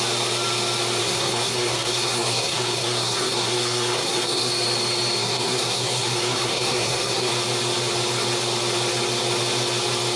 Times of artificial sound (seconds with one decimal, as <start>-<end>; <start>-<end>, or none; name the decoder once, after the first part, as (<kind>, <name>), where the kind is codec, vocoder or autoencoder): 1.0-4.5 (codec, SNAC); 5.2-7.3